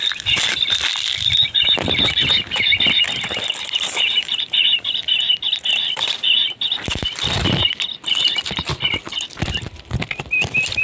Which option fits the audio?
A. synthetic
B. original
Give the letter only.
B